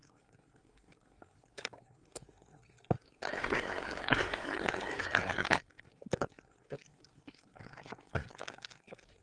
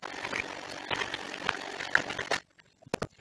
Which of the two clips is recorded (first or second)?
second